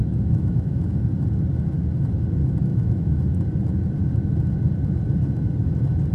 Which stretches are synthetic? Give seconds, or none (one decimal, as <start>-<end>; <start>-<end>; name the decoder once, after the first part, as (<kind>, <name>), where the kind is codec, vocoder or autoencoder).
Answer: 0.0-1.0 (autoencoder, DAC-VAE); 2.7-3.2